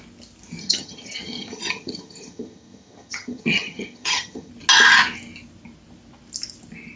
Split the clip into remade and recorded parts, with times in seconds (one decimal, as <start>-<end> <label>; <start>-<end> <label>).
0.0-0.6 recorded; 0.6-4.5 remade; 4.5-7.0 recorded